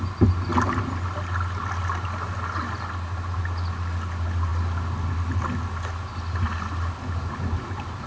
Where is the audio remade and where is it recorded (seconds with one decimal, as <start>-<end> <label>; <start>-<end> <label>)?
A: 0.0-8.1 recorded